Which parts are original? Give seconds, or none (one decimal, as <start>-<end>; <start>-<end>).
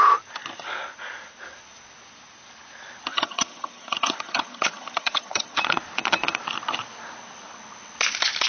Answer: 0.0-3.1; 5.6-8.5